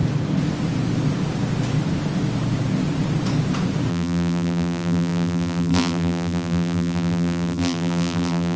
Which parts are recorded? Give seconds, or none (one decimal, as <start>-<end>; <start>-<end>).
0.0-3.9